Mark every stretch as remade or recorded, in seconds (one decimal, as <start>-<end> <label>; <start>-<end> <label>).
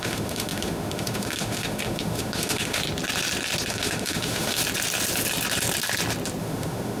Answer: 0.0-2.8 remade; 2.8-3.7 recorded; 3.7-4.6 remade; 4.6-6.4 recorded; 6.4-7.0 remade